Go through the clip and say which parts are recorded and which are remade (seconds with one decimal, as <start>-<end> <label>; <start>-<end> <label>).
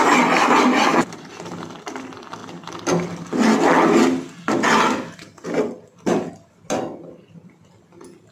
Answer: 0.0-0.9 recorded; 0.9-1.6 remade; 1.6-8.3 recorded